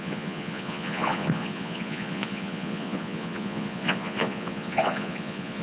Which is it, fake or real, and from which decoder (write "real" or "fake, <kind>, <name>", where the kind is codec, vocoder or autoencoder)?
fake, vocoder, Vocos